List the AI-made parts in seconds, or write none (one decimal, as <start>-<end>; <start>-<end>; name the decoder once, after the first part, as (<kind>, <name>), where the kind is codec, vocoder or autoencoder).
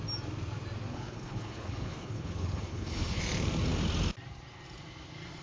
0.9-3.2 (codec, HILCodec)